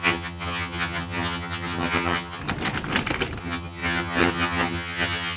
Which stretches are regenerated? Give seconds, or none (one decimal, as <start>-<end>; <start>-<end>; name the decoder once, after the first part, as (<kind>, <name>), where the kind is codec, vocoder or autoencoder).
0.0-2.4 (vocoder, HiFi-GAN); 3.4-5.4